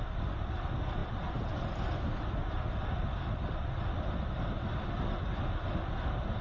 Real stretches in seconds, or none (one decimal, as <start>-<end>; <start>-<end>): 0.0-6.4